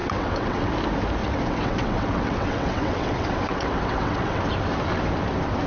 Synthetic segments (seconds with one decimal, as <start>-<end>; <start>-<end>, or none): 0.0-0.7; 1.2-4.4